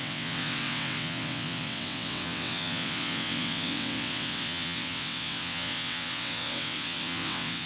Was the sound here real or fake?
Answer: fake